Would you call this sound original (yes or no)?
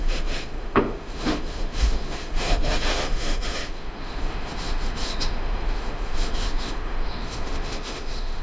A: no